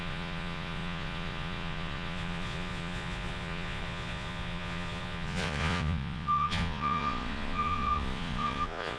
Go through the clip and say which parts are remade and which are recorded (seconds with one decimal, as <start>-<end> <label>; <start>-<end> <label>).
0.0-9.0 remade